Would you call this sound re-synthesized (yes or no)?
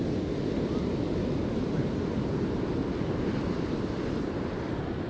no